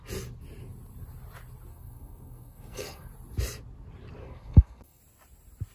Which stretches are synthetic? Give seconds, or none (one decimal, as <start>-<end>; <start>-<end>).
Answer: 1.7-3.1; 4.2-5.0